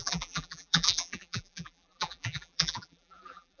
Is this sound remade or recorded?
remade